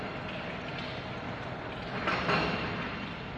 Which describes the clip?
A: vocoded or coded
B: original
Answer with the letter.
B